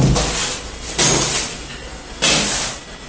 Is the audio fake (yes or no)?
no